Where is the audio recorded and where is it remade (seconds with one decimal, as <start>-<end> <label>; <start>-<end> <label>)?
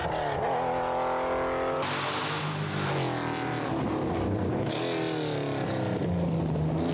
0.0-6.9 recorded